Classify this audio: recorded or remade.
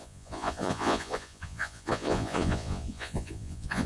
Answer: remade